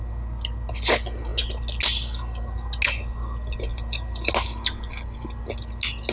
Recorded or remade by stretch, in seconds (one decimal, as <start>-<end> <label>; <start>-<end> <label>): 0.0-3.7 recorded; 3.7-4.3 remade; 4.3-6.1 recorded